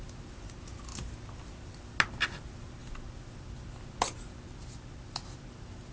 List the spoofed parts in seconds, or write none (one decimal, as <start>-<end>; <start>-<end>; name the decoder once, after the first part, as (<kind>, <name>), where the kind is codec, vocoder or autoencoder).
none